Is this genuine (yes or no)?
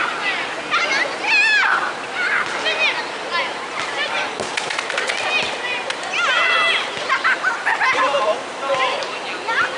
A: yes